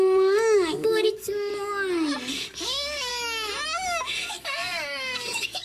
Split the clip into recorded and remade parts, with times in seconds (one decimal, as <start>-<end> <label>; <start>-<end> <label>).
0.0-1.5 remade; 1.5-2.3 recorded; 2.3-3.1 remade; 3.1-4.3 recorded; 4.3-5.6 remade